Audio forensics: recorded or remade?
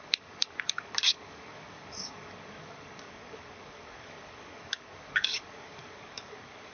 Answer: remade